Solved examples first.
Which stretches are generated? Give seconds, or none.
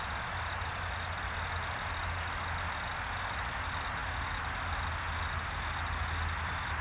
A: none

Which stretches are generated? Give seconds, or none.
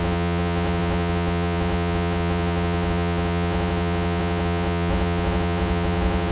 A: 0.0-6.3 (vocoder, Vocos)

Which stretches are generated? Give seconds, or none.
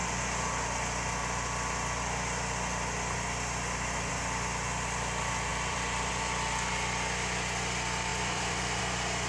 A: 5.5-6.1 (vocoder, BigVGAN v2); 8.1-8.8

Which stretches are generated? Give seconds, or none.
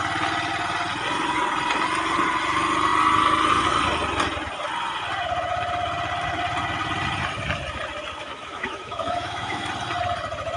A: 8.2-9.7 (autoencoder, DAC-VAE)